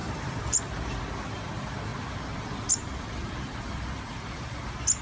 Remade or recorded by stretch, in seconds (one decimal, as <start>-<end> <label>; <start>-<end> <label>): 0.0-0.6 remade; 0.6-5.0 recorded